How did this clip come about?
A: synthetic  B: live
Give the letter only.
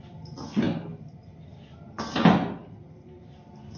B